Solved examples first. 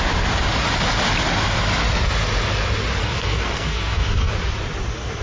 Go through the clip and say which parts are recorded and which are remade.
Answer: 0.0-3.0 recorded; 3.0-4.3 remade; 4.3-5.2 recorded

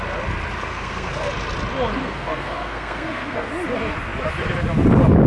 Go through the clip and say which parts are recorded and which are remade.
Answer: 0.0-0.7 recorded; 0.7-1.3 remade; 1.3-2.0 recorded; 2.0-3.5 remade; 3.5-5.3 recorded